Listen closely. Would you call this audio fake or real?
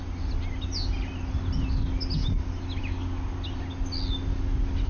real